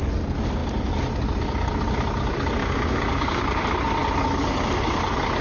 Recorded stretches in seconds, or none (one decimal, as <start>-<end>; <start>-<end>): 0.0-2.6; 3.6-5.4